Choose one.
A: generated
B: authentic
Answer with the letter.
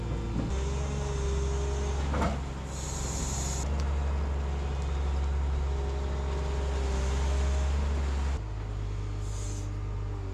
B